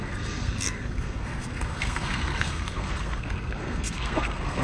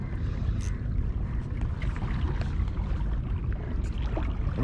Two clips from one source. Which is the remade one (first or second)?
first